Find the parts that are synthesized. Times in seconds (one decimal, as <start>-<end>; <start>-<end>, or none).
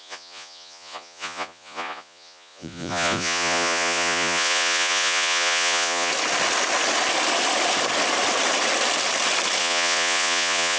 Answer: 0.0-6.1; 9.6-10.8